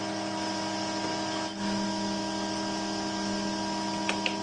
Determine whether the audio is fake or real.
real